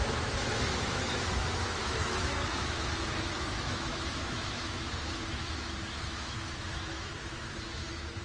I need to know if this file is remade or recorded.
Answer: remade